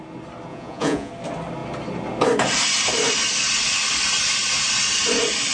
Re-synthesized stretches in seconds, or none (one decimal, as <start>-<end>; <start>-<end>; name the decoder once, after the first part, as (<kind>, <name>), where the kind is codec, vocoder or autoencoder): 0.5-1.1 (vocoder, Vocos)